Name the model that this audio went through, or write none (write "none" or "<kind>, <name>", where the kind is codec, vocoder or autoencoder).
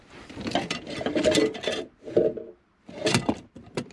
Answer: none